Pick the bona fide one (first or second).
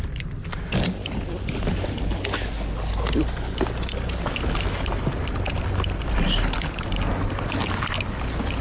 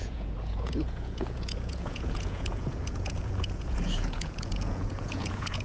first